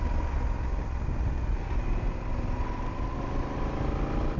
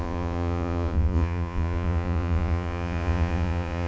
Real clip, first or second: first